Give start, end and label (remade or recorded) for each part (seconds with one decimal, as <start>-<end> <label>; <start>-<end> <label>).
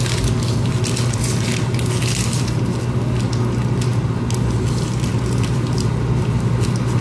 0.0-7.0 recorded